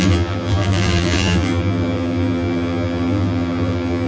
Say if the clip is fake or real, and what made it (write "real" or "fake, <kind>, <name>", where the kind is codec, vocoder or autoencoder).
fake, vocoder, BigVGAN v2